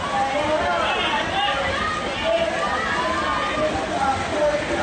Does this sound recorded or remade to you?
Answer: recorded